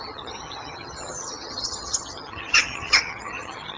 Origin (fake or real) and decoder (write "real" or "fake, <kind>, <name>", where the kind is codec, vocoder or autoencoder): fake, vocoder, HiFi-GAN